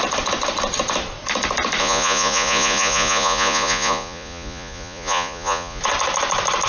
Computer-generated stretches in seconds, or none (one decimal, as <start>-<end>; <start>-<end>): 1.8-5.8